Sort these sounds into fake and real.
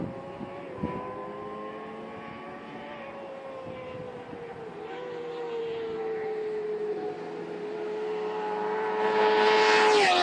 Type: real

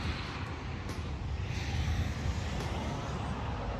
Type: real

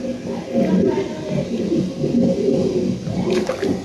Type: real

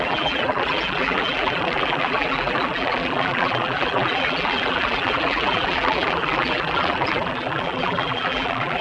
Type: fake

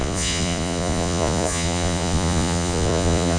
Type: fake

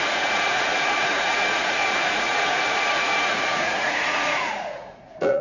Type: fake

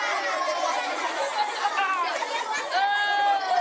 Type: real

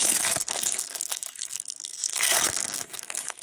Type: fake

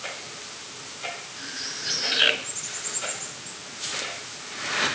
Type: real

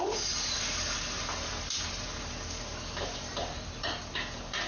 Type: real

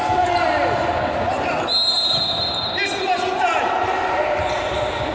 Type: real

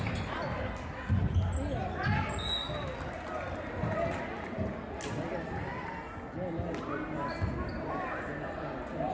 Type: real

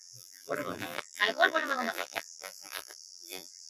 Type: fake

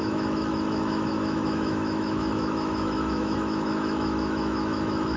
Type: fake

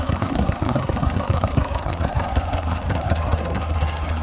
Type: fake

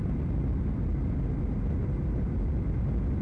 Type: real